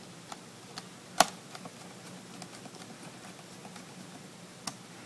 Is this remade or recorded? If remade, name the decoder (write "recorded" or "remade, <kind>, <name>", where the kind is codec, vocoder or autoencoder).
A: recorded